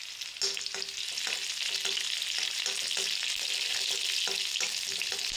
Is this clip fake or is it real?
real